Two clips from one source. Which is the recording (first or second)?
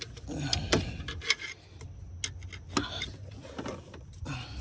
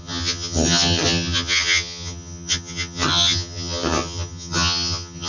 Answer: first